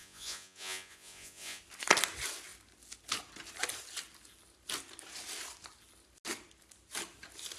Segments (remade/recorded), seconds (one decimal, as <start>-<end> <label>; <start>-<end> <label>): 0.0-1.6 remade; 1.6-7.6 recorded